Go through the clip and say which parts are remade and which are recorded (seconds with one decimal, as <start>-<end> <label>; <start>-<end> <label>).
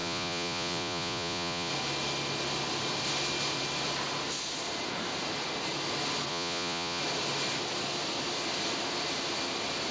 0.0-1.7 remade; 1.7-6.3 recorded; 6.3-7.0 remade; 7.0-9.9 recorded